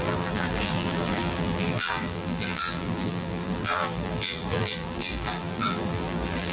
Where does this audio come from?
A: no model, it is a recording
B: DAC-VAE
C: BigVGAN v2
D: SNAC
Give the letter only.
C